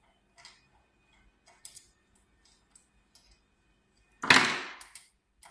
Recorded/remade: recorded